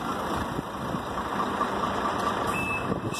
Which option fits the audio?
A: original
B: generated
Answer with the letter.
B